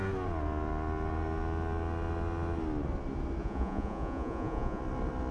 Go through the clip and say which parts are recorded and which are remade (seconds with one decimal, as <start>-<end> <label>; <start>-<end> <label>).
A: 0.0-3.4 recorded; 3.4-4.8 remade; 4.8-5.3 recorded